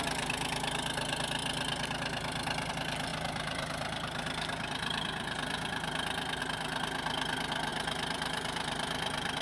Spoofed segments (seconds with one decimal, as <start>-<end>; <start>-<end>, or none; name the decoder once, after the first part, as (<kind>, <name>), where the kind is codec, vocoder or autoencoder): 3.1-6.4 (vocoder, BigVGAN v2); 7.7-9.4